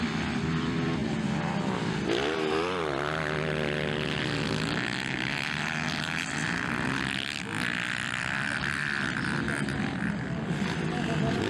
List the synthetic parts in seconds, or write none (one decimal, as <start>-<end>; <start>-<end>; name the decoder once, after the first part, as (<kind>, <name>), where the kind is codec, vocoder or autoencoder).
none